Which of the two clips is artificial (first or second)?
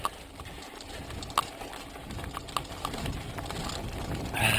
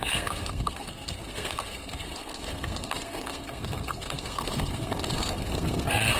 second